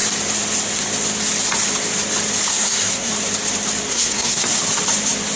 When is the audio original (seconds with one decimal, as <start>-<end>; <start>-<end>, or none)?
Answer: 0.0-2.5; 3.1-3.9; 4.6-5.4